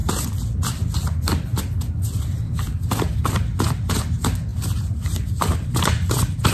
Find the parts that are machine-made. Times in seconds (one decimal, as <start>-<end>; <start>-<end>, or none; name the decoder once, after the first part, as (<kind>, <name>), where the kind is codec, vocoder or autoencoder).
0.0-3.9 (vocoder, BigVGAN v2); 4.5-6.5